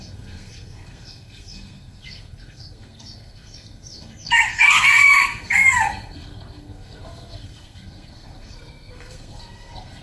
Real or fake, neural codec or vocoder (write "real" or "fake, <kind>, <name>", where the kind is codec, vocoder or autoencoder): fake, codec, SNAC